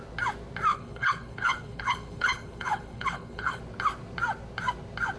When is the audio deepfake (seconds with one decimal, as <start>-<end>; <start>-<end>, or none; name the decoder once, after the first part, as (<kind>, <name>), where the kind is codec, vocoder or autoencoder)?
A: 0.7-3.6 (codec, HILCodec)